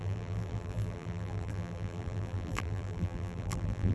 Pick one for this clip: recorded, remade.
remade